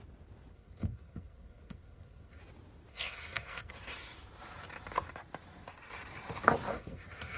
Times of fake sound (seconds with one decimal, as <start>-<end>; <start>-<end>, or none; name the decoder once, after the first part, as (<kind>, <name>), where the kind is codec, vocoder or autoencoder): 0.5-2.4 (codec, SNAC); 2.9-3.7; 6.7-7.4